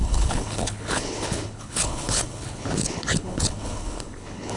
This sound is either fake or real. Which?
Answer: fake